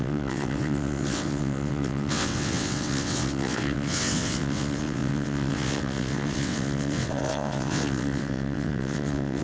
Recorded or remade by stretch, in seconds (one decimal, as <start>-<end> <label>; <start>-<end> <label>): 0.0-9.4 remade